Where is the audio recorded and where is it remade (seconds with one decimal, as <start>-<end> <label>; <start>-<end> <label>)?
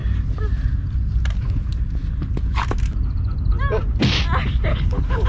0.0-4.7 recorded; 4.7-5.3 remade